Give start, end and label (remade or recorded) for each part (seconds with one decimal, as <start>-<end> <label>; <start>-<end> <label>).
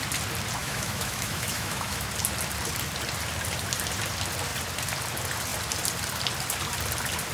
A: 0.0-0.6 recorded; 0.6-2.1 remade; 2.1-7.3 recorded